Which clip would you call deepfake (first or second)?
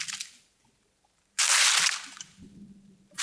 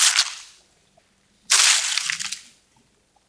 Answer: first